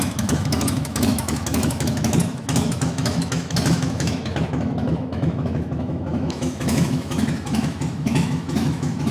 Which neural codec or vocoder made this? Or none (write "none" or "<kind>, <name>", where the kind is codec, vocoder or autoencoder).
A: autoencoder, DAC-VAE